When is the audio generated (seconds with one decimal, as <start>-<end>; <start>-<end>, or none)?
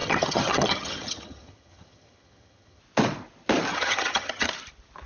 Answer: 0.0-2.8; 3.7-4.5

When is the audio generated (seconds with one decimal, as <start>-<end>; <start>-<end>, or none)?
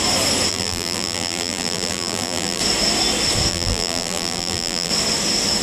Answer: 0.5-2.6; 3.5-4.9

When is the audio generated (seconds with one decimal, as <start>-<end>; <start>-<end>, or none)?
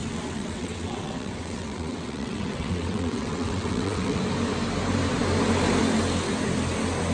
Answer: 0.0-4.2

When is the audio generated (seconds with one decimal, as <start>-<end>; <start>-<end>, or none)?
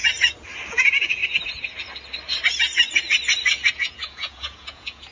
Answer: 0.7-1.2; 3.7-5.1